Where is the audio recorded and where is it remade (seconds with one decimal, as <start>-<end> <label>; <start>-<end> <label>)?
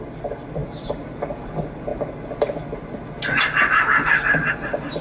0.0-5.0 recorded